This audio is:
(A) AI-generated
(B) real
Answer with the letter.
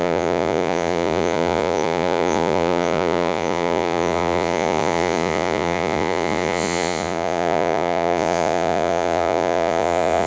A